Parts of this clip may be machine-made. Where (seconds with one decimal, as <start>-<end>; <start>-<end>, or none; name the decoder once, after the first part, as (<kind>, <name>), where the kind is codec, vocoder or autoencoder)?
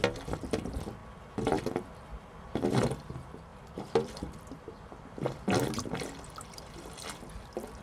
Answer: 1.0-1.6 (vocoder, BigVGAN v2); 3.5-7.3